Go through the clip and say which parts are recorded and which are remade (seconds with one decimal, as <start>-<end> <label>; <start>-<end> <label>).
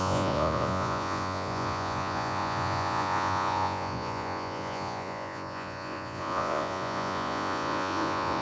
0.0-8.4 remade